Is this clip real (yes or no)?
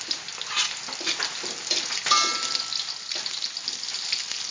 yes